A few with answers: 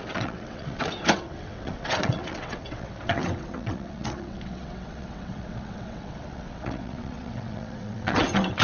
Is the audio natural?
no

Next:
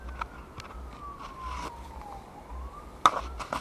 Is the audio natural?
yes